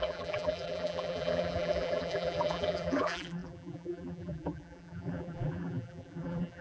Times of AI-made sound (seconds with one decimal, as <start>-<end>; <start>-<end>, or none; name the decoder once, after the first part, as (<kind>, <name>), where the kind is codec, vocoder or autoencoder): 0.0-6.6 (vocoder, BigVGAN v2)